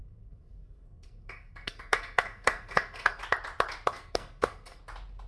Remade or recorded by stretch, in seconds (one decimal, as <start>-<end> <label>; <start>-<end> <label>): 0.0-3.2 remade; 3.2-3.9 recorded; 3.9-4.8 remade; 4.8-5.3 recorded

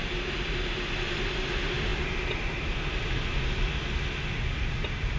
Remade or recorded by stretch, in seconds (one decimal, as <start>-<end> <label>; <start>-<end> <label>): 0.0-5.2 recorded

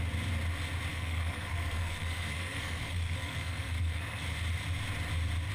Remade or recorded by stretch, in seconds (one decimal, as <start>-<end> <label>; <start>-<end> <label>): 0.0-0.9 recorded; 0.9-4.2 remade; 4.2-5.5 recorded

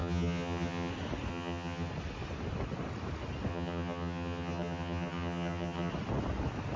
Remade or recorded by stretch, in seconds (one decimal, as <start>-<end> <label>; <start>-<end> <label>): 0.0-0.9 remade; 0.9-1.3 recorded; 1.3-1.9 remade; 1.9-3.5 recorded; 3.5-5.9 remade; 5.9-6.8 recorded

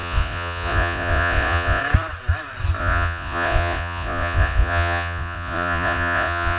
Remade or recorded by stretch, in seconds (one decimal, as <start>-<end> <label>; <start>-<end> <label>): 0.0-1.8 remade; 1.8-2.8 recorded; 2.8-6.6 remade

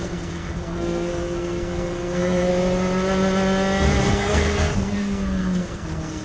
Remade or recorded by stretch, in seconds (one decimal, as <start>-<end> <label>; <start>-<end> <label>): 0.0-2.5 remade; 2.5-4.1 recorded; 4.1-6.2 remade